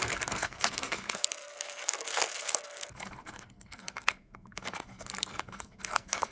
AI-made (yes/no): yes